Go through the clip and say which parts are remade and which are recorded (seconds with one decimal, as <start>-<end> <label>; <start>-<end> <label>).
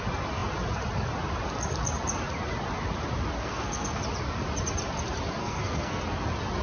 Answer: 0.0-3.4 recorded; 3.4-4.0 remade; 4.0-5.4 recorded; 5.4-6.0 remade; 6.0-6.6 recorded